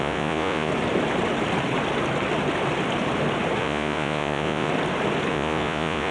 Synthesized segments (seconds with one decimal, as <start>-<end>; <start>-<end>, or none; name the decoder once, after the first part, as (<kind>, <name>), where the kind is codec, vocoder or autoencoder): 0.0-0.7 (vocoder, Vocos); 3.6-4.7; 5.3-6.1